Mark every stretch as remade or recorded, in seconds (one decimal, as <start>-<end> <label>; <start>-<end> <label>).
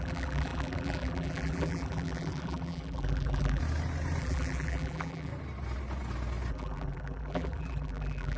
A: 0.0-3.6 remade; 3.6-4.2 recorded; 4.2-5.3 remade; 5.3-6.5 recorded; 6.5-8.4 remade